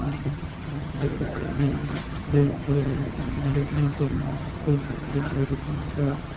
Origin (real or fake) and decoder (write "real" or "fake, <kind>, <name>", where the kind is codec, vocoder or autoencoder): fake, vocoder, HiFi-GAN